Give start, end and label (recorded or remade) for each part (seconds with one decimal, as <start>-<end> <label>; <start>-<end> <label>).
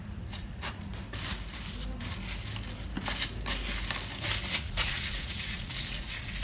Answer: 0.0-0.9 remade; 0.9-4.5 recorded; 4.5-6.4 remade